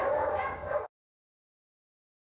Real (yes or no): no